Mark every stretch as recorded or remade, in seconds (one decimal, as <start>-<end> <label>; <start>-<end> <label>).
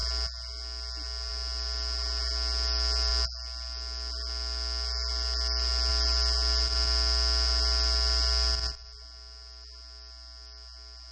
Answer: 0.0-11.1 recorded